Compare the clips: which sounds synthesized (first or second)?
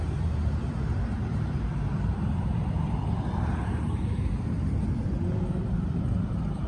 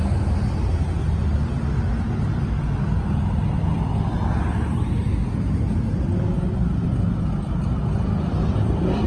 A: first